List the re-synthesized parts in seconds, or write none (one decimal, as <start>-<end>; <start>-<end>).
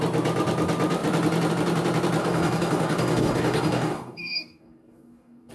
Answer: 2.2-5.5